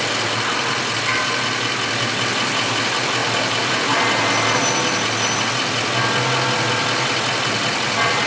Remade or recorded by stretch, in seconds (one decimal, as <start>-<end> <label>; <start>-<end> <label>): 0.0-8.3 recorded